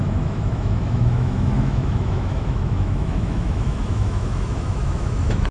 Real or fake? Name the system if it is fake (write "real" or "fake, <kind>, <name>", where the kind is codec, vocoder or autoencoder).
fake, autoencoder, DAC-VAE